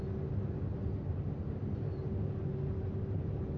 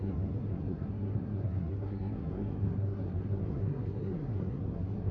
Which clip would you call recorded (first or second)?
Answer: first